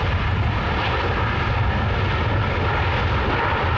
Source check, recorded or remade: recorded